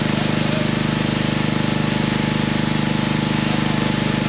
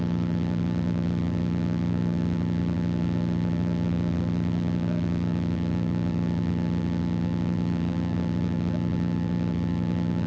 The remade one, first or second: second